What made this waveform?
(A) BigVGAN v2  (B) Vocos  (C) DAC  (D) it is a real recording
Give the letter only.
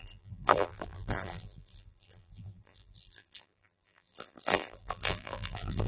A